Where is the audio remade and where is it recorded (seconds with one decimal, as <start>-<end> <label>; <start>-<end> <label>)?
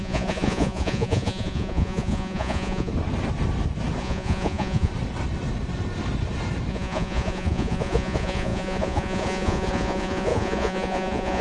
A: 0.0-2.9 remade; 2.9-4.0 recorded; 4.0-4.9 remade; 4.9-6.7 recorded; 6.7-11.4 remade